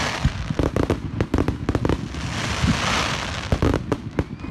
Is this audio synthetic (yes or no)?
no